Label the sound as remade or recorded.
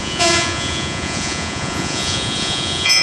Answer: remade